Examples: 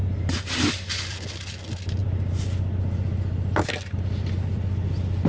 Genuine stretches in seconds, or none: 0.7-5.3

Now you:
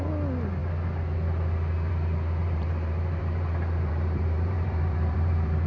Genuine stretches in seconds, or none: 0.0-2.4

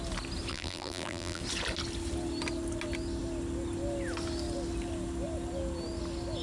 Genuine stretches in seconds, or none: 0.0-0.5; 1.4-6.4